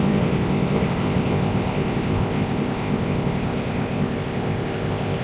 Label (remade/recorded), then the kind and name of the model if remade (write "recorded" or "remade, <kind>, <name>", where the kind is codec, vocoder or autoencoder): remade, codec, ZipCodec